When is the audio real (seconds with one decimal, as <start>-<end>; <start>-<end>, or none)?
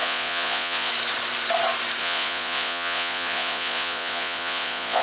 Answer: 0.9-2.0